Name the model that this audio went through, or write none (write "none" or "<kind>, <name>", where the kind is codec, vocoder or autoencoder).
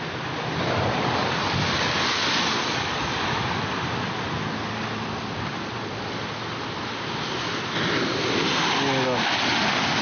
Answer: none